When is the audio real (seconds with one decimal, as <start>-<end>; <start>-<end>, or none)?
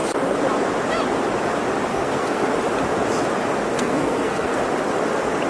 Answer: 0.0-1.9; 2.5-3.7; 4.6-5.5